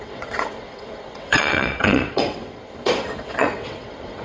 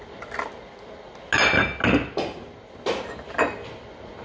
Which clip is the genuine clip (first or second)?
second